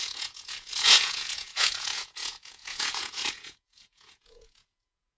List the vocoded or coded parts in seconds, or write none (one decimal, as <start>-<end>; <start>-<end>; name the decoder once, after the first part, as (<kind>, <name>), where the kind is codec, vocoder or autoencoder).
0.0-5.2 (vocoder, Vocos)